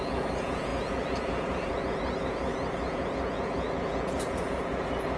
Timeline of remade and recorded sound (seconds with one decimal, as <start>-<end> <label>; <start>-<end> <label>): 0.0-5.2 remade